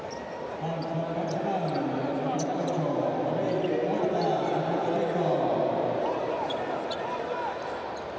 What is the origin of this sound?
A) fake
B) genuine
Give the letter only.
B